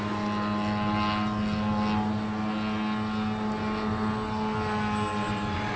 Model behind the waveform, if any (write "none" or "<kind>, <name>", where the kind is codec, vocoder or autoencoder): none